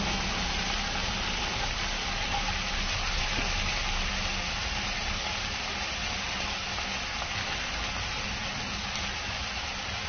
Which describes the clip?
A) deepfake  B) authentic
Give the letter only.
B